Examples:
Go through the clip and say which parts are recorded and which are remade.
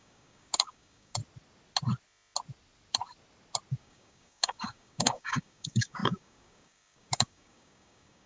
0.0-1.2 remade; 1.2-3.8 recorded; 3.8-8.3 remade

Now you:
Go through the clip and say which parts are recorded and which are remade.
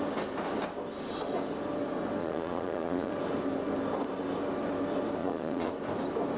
0.0-2.2 recorded; 2.2-3.1 remade; 3.1-5.2 recorded; 5.2-5.7 remade; 5.7-6.4 recorded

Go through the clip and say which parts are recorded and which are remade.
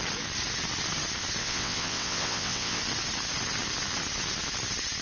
0.0-1.4 recorded; 1.4-2.8 remade; 2.8-5.0 recorded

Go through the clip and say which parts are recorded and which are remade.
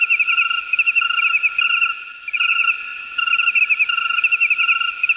0.0-5.2 recorded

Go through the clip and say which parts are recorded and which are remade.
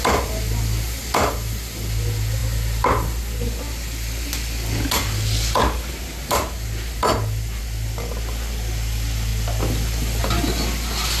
0.0-11.2 recorded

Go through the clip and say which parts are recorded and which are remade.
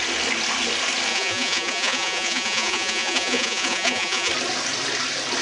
0.0-1.1 recorded; 1.1-4.3 remade; 4.3-5.4 recorded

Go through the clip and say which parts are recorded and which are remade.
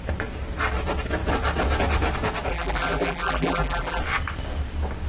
0.0-2.5 recorded; 2.5-4.0 remade; 4.0-5.1 recorded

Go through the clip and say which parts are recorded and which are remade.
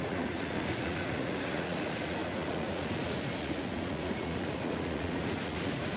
0.0-6.0 remade